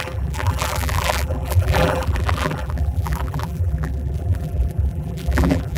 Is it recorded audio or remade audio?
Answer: remade